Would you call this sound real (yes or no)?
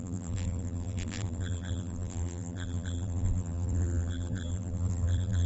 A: no